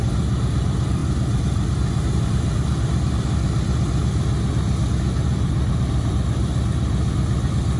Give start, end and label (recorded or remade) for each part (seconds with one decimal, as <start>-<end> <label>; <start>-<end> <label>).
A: 0.0-7.8 recorded